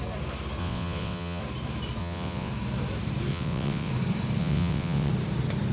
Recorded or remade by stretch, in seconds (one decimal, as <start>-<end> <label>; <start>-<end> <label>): 0.0-0.6 recorded; 0.6-1.4 remade; 1.4-2.0 recorded; 2.0-2.5 remade; 2.5-3.3 recorded; 3.3-3.9 remade; 3.9-4.4 recorded; 4.4-5.1 remade; 5.1-5.7 recorded